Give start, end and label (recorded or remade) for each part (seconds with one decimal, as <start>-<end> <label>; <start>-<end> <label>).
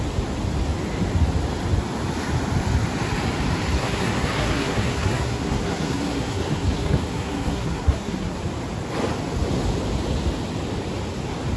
0.0-3.7 recorded; 3.7-8.4 remade; 8.4-11.6 recorded